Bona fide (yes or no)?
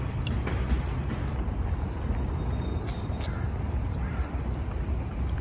no